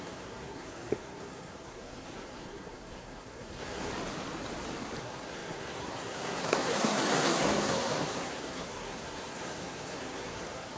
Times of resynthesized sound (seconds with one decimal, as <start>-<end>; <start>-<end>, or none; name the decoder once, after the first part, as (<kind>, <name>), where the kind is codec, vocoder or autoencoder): 0.0-3.9 (codec, SNAC); 5.0-10.8